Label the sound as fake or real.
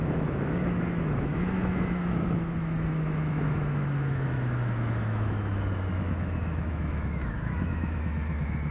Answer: fake